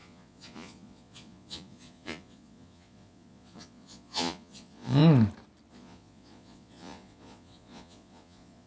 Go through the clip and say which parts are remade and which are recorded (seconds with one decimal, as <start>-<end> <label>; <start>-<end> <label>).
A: 0.0-5.0 remade; 5.0-5.7 recorded; 5.7-8.7 remade

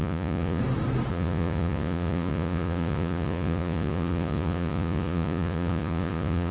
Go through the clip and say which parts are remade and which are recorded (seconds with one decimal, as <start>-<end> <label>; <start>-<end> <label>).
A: 0.0-0.6 remade; 0.6-1.1 recorded; 1.1-6.5 remade